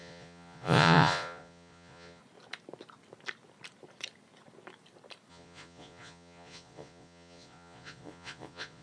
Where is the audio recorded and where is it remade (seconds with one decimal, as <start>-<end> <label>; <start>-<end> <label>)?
0.0-2.2 remade; 2.2-5.3 recorded; 5.3-8.8 remade